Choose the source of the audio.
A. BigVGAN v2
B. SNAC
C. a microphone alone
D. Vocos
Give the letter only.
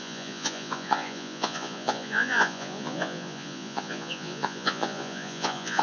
D